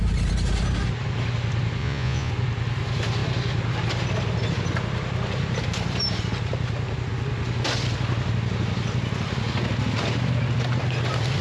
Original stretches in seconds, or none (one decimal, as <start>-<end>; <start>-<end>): 0.0-1.8; 2.3-11.4